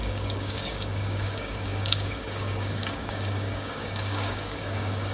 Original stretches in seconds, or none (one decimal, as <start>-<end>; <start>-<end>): none